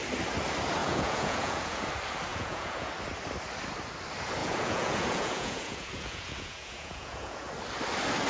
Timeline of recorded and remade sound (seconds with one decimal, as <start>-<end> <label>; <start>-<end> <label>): 0.0-0.8 recorded; 0.8-1.9 remade; 1.9-2.3 recorded; 2.3-2.9 remade; 2.9-4.4 recorded; 4.4-7.5 remade; 7.5-8.3 recorded